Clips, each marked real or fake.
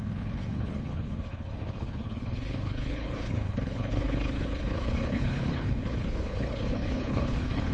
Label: fake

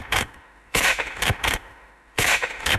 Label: fake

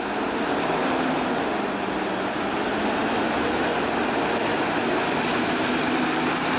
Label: real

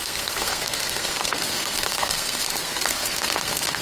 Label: fake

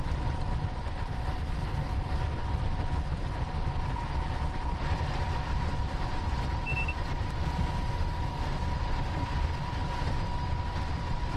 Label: real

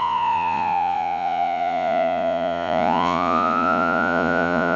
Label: fake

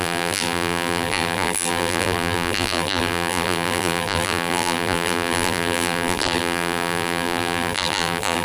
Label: fake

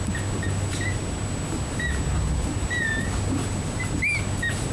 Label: real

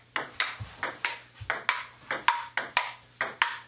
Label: real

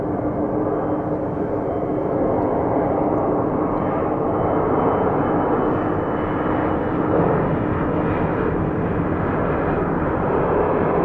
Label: real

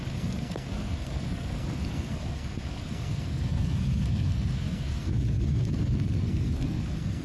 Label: fake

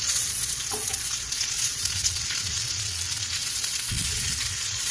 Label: fake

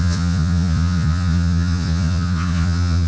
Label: fake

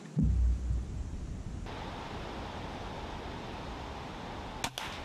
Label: real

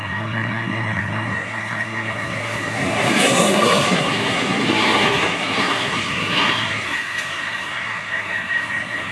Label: fake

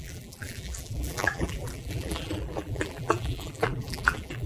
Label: fake